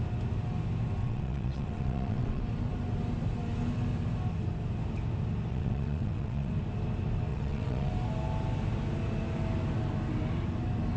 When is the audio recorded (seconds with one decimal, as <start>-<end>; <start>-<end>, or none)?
0.0-1.0; 2.4-5.5; 6.5-7.3; 7.9-11.0